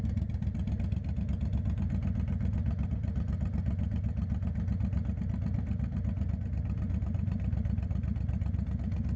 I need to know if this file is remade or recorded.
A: recorded